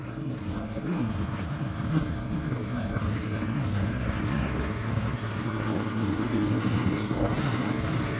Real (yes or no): no